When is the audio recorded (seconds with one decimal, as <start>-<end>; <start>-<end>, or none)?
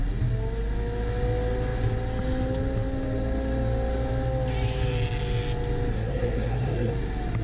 0.0-5.9; 6.9-7.4